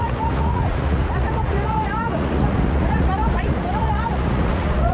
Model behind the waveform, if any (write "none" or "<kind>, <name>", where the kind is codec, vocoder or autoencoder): vocoder, Vocos